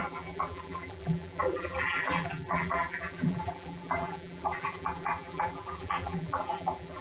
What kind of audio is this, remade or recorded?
remade